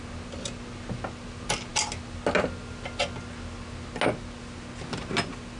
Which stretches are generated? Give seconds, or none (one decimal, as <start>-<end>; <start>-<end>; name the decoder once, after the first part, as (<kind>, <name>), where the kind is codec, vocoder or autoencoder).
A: none